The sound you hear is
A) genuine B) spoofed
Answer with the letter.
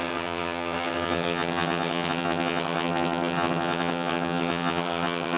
B